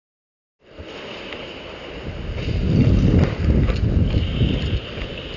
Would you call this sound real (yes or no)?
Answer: yes